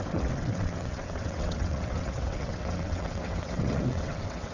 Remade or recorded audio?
remade